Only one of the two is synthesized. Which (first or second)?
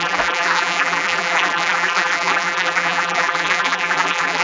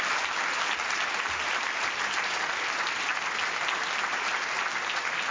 first